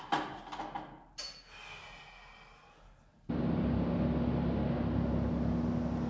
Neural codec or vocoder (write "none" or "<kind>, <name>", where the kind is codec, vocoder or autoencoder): none